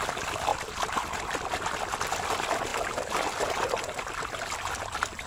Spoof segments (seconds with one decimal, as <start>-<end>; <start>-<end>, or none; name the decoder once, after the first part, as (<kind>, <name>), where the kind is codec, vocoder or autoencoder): none